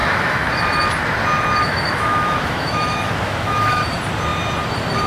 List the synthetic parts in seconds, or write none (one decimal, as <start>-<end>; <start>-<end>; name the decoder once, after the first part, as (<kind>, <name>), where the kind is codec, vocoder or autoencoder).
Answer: 0.0-0.5 (autoencoder, DAC-VAE); 1.6-3.8